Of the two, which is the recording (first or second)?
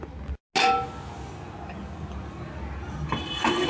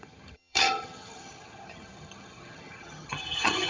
first